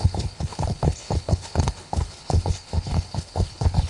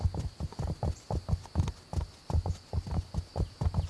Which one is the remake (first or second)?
first